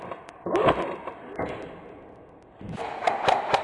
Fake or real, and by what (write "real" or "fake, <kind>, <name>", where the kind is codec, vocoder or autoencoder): real